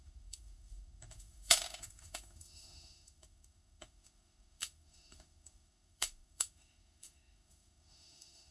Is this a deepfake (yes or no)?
yes